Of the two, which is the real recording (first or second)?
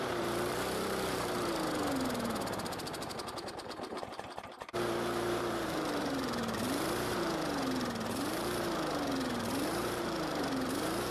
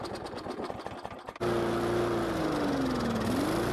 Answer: second